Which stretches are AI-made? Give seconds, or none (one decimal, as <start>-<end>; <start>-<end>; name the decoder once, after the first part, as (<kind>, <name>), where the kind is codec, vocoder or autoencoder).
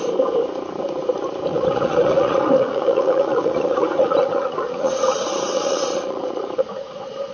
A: 1.5-5.1 (vocoder, Vocos); 5.5-7.3